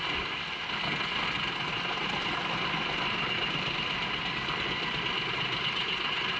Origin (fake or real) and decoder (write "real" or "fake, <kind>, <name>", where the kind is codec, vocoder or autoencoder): real